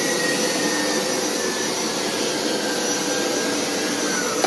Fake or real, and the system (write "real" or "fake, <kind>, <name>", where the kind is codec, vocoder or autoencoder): real